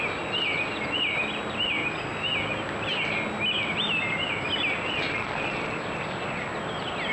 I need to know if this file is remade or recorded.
recorded